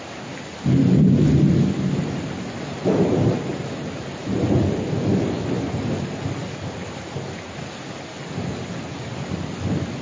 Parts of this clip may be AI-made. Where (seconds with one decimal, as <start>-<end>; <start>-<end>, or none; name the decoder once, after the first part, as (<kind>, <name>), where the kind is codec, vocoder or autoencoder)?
none